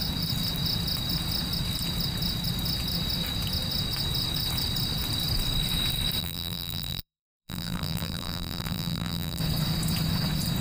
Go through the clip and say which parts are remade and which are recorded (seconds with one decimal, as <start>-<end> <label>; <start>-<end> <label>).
0.0-6.2 recorded; 6.2-9.4 remade; 9.4-10.6 recorded